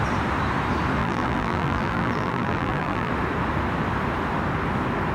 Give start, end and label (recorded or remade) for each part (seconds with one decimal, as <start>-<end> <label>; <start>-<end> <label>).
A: 0.0-1.0 recorded; 1.0-3.1 remade; 3.1-5.1 recorded